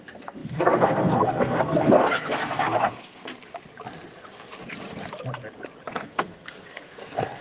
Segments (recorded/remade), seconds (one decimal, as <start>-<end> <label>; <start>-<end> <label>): 0.0-3.3 remade; 3.3-5.9 recorded; 5.9-7.4 remade